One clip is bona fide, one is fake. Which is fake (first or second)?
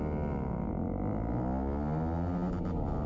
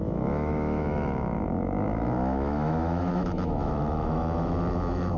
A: second